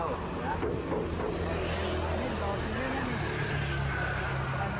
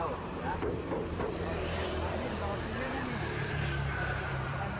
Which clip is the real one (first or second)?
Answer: first